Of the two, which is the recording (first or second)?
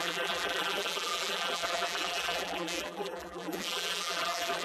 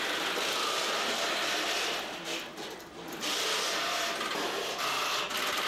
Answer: second